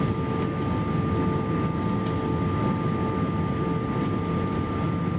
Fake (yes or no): no